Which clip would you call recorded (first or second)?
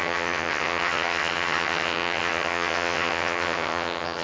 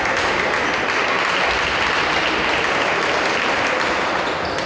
second